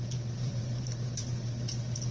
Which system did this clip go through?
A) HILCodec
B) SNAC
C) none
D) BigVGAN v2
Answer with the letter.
C